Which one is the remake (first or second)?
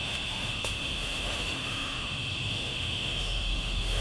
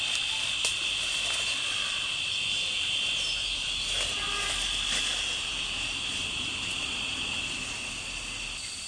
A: first